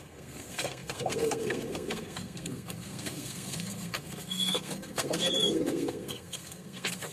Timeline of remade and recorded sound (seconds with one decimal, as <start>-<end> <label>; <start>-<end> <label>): 0.0-7.1 remade